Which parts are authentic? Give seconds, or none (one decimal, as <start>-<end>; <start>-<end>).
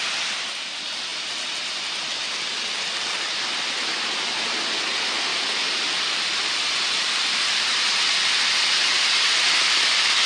0.0-5.3; 7.6-10.3